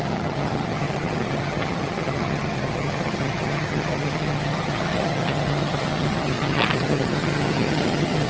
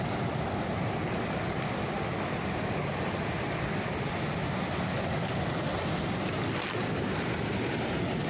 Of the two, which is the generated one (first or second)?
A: first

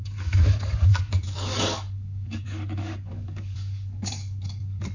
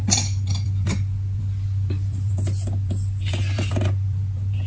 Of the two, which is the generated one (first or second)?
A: first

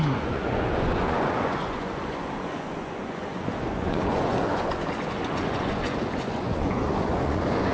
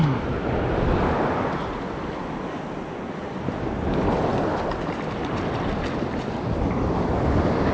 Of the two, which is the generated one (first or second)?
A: first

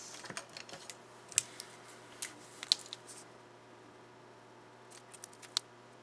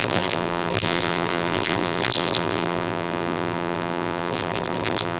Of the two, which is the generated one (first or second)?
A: second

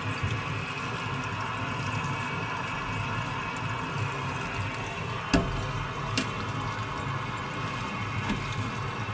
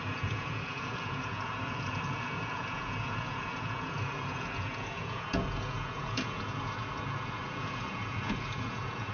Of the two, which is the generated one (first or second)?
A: second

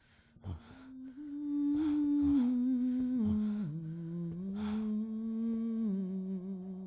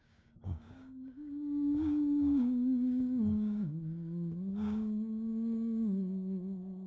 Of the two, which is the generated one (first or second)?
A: second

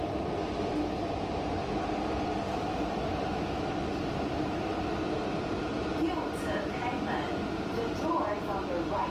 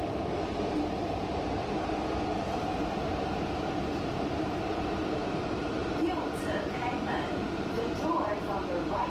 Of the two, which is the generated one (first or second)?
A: second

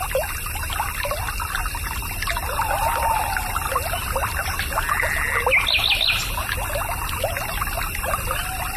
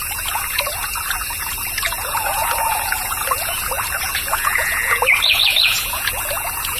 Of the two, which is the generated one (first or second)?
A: second